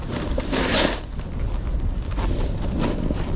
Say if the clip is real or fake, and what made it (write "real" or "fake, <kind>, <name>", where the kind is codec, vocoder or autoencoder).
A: real